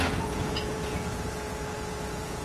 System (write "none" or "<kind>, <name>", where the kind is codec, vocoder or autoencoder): vocoder, Vocos